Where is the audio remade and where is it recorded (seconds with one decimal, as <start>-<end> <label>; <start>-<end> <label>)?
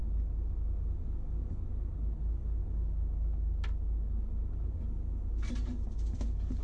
0.0-6.6 recorded